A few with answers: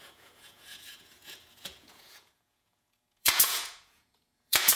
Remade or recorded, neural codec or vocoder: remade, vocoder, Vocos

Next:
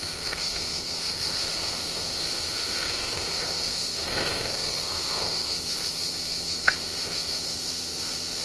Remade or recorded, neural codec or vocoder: remade, codec, SNAC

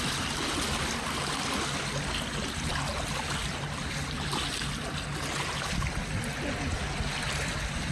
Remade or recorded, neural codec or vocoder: recorded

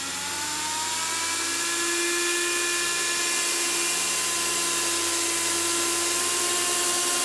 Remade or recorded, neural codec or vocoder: recorded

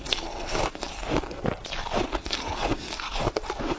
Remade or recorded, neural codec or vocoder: recorded